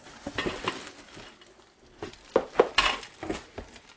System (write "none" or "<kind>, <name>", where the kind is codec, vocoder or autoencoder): none